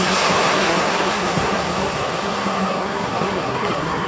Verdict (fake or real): fake